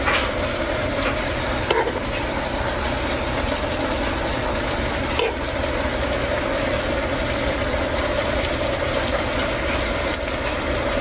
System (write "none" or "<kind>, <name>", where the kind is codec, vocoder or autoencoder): none